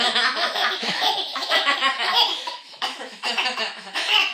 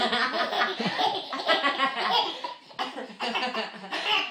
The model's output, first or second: first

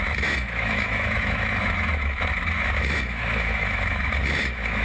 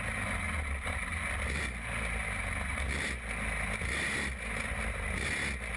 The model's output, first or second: first